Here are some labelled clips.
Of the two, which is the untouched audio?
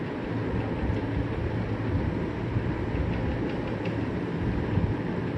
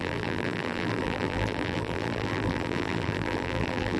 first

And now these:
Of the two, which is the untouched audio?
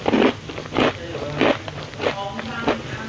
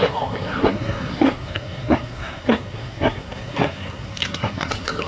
first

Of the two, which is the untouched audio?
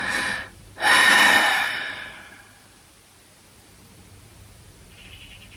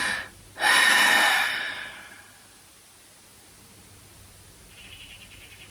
second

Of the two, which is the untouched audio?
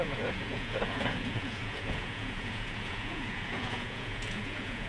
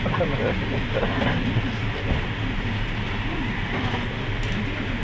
second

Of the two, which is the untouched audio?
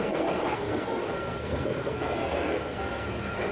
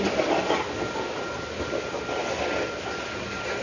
second